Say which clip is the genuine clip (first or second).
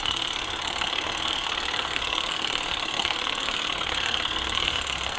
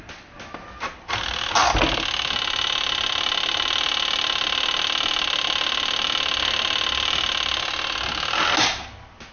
second